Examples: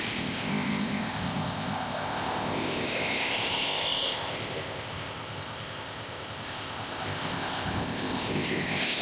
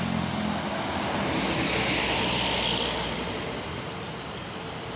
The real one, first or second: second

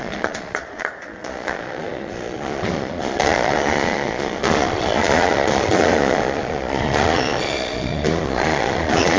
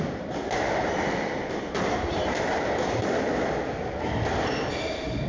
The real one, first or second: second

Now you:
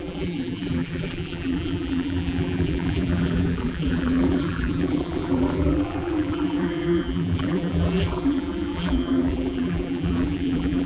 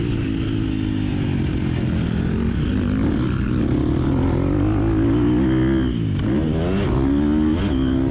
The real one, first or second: second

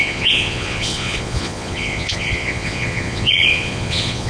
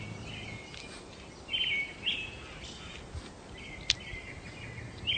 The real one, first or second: second